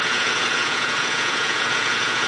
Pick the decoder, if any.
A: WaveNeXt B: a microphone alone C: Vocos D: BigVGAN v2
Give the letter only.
C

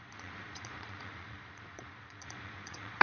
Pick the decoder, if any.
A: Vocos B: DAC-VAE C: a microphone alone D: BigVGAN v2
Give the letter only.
A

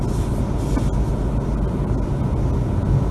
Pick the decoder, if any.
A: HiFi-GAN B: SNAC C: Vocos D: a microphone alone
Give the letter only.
D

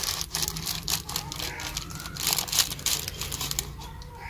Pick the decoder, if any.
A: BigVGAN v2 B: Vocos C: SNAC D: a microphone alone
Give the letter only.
D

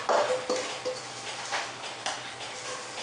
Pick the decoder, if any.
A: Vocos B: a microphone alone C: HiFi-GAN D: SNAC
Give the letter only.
B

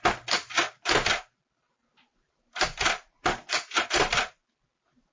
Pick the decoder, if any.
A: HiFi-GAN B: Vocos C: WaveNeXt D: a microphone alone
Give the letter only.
D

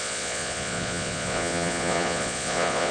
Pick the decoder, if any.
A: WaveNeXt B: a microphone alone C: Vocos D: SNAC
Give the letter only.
C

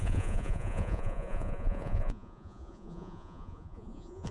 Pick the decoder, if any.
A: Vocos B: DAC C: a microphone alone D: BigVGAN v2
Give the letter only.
A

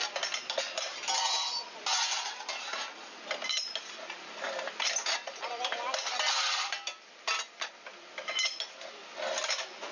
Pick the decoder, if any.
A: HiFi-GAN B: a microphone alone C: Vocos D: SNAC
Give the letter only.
B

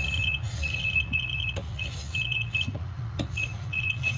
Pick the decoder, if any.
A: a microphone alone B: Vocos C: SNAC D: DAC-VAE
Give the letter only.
B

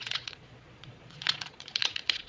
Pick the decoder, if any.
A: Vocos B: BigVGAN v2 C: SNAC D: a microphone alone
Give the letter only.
A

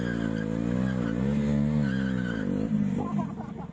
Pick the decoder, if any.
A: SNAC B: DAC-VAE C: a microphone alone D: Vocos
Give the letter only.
C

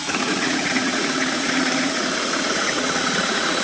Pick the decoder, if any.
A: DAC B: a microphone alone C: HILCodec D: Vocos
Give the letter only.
D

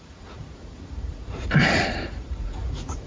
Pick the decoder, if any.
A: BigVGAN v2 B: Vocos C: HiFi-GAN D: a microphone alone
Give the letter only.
B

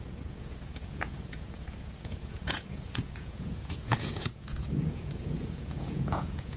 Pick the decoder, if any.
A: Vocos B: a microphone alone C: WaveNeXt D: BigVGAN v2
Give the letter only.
A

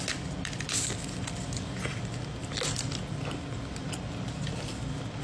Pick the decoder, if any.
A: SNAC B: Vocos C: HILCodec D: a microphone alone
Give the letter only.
D